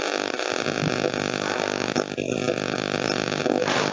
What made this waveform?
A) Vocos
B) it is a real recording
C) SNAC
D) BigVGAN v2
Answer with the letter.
B